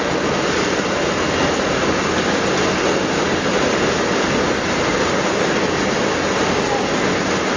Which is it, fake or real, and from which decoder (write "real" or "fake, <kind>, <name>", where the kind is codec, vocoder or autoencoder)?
real